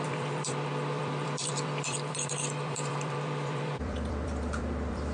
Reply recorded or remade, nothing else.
remade